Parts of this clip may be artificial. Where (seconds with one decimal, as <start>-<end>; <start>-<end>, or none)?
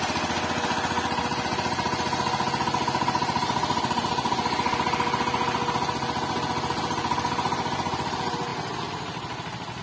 none